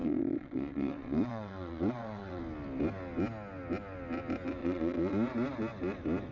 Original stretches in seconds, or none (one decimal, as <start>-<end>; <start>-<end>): 2.4-4.6; 5.1-6.3